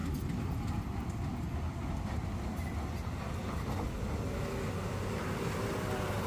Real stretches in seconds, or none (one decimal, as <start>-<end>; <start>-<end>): 0.0-6.3